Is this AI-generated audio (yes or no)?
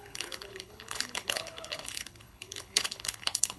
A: yes